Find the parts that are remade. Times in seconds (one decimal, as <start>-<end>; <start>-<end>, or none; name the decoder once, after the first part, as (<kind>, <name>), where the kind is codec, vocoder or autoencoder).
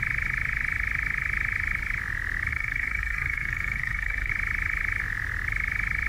2.5-4.3 (codec, SNAC)